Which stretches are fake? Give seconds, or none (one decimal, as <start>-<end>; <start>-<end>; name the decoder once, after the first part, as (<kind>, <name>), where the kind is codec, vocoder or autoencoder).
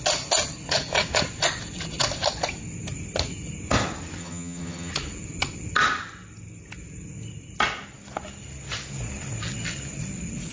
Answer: 4.2-4.9 (vocoder, HiFi-GAN)